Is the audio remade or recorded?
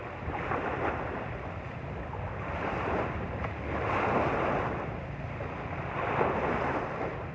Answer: recorded